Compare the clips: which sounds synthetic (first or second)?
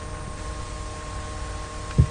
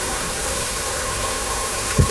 second